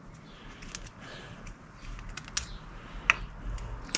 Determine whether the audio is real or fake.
real